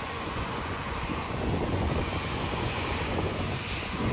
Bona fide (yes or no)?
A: no